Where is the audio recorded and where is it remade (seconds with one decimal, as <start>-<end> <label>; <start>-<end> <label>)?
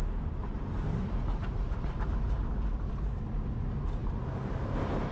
0.0-5.1 recorded